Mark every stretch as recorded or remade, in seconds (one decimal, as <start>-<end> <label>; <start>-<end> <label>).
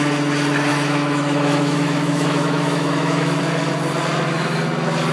0.0-0.7 recorded; 0.7-3.4 remade; 3.4-5.1 recorded